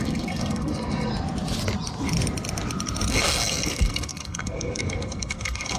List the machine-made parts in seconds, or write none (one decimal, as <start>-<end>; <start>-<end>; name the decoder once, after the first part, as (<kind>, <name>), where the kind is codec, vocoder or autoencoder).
0.0-1.1 (codec, SNAC); 3.1-5.8